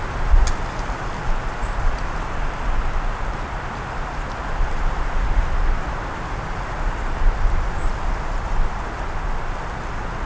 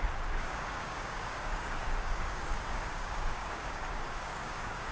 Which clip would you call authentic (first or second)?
first